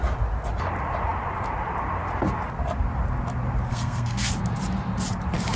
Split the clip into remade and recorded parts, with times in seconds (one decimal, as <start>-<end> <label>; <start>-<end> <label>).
0.0-3.7 recorded; 3.7-4.3 remade; 4.3-5.6 recorded